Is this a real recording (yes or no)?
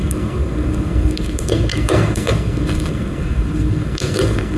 no